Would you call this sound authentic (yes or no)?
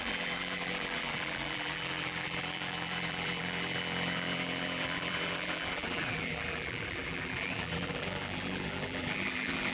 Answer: no